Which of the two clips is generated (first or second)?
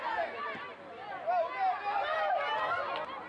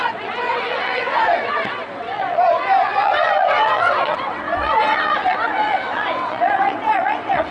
second